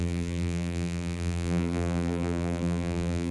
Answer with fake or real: fake